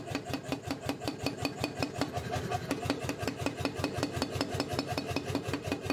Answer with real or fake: fake